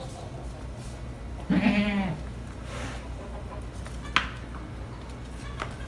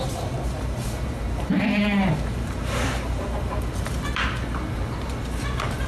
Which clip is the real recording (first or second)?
first